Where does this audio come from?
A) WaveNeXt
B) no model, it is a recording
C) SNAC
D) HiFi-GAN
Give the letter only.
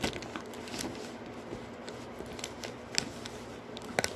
B